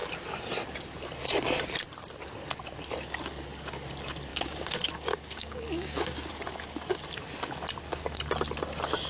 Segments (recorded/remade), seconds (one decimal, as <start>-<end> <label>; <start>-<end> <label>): 0.0-4.3 recorded; 4.3-6.3 remade; 6.3-9.1 recorded